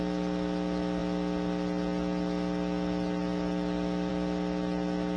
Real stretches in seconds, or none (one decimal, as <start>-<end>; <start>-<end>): 0.0-5.2

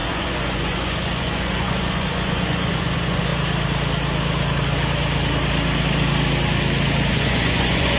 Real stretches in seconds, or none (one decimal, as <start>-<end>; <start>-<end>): 3.3-7.1

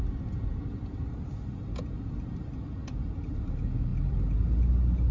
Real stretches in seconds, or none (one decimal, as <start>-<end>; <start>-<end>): 0.0-5.1

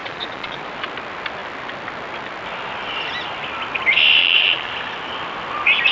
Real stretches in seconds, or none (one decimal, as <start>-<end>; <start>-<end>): 0.6-4.2; 4.7-5.9

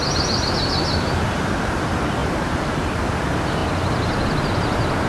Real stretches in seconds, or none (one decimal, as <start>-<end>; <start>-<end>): 0.0-2.2; 3.0-5.1

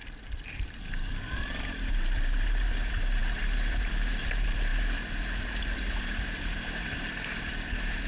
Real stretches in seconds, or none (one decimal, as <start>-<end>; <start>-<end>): 0.0-0.8